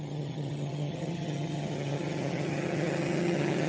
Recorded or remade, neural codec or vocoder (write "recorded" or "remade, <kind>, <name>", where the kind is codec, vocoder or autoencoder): remade, vocoder, HiFi-GAN